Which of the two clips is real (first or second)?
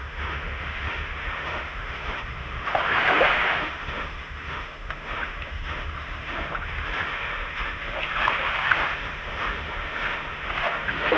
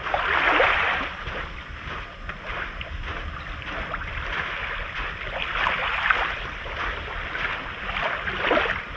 second